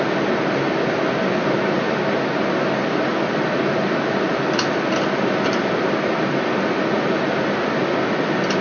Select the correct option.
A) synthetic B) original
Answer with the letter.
B